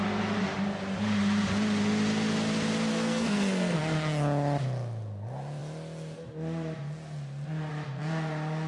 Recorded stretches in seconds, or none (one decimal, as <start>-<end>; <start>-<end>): 0.0-2.9; 3.8-8.7